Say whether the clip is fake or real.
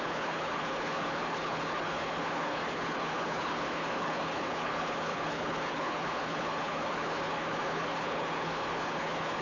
fake